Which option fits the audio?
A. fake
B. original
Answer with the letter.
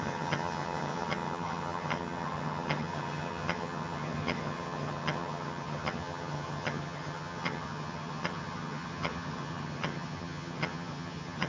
A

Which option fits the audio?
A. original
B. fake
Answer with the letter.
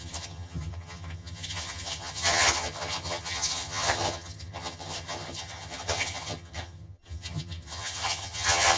B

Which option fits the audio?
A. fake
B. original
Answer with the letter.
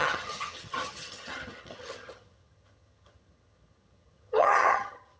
A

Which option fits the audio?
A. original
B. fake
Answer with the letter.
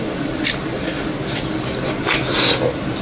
A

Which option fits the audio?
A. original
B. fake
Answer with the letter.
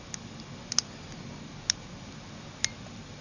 A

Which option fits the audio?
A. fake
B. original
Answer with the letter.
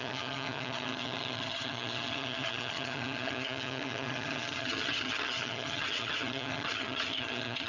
A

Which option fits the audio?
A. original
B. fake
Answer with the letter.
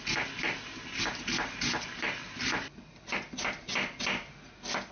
A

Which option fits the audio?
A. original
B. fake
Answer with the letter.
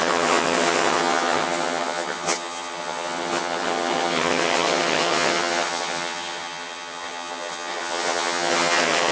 B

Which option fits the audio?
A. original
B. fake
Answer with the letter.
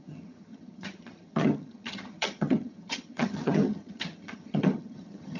B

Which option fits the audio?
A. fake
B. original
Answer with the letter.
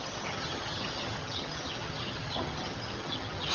A